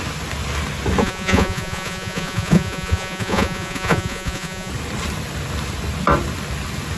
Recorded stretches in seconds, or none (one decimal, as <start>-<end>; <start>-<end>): 0.0-1.0; 4.7-7.0